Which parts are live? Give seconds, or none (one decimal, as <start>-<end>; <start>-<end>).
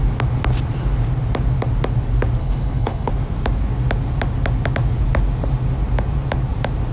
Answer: 0.0-2.4; 3.1-6.9